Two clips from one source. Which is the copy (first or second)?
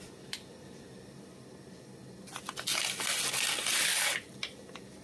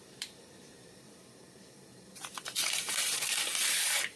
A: second